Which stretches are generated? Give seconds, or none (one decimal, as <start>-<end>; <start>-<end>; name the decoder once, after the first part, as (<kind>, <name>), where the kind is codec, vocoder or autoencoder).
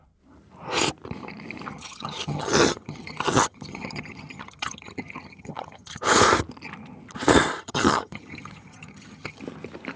1.7-6.0 (vocoder, HiFi-GAN); 7.6-9.4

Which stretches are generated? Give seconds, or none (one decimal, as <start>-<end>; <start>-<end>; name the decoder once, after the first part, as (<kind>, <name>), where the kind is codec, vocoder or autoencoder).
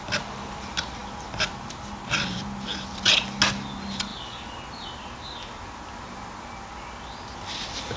none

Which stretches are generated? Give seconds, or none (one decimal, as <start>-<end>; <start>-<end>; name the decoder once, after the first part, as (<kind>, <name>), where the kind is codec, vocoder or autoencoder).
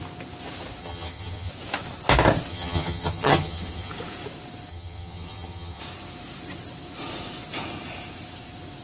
0.8-1.5 (vocoder, HiFi-GAN); 2.5-3.9; 4.7-5.8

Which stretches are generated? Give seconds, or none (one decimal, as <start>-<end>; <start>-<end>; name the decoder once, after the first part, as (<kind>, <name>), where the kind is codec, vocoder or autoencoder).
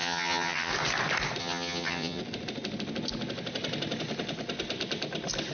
0.0-0.7 (vocoder, HiFi-GAN); 1.4-2.2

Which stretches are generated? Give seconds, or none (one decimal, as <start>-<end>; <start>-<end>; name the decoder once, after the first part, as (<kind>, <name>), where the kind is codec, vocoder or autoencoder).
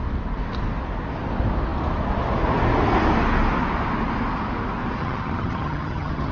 5.0-6.3 (vocoder, HiFi-GAN)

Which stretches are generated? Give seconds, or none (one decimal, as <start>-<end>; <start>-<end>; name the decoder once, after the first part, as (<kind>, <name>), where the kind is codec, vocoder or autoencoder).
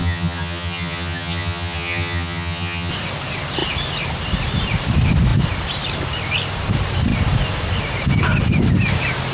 0.0-2.9 (vocoder, HiFi-GAN)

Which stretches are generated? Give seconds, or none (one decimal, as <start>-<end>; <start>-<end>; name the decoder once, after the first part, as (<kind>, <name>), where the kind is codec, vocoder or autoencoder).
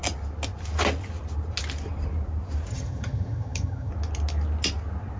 2.7-3.9 (vocoder, HiFi-GAN)